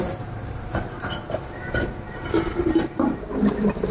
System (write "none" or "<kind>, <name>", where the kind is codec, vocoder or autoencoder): vocoder, BigVGAN v2